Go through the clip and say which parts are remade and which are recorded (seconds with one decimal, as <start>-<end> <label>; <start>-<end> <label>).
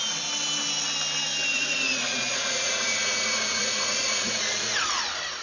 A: 0.0-1.5 recorded; 1.5-4.7 remade; 4.7-5.4 recorded